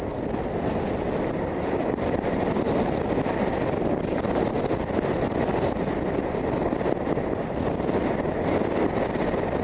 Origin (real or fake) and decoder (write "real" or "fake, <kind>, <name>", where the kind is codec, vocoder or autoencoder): real